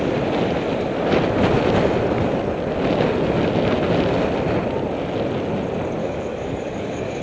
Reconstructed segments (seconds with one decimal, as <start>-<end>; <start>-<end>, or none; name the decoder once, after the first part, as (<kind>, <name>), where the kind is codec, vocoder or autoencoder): 6.0-7.2 (codec, DAC)